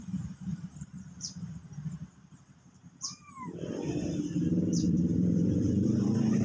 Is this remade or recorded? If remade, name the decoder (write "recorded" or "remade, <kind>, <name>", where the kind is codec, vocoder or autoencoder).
remade, vocoder, BigVGAN v2